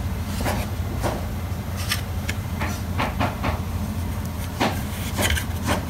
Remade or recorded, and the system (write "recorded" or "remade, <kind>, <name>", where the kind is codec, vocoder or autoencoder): recorded